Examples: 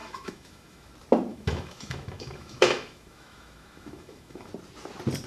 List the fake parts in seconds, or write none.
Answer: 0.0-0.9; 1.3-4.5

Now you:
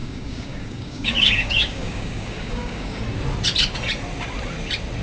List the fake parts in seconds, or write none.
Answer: 0.0-3.0

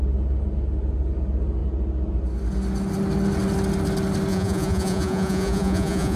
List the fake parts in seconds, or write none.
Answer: 4.3-6.2

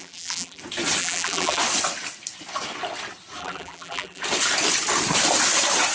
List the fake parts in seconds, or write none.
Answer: 0.0-0.6; 1.0-1.6; 3.4-4.2

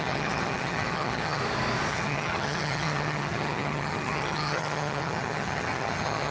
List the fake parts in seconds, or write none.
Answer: 0.0-1.4; 1.9-6.3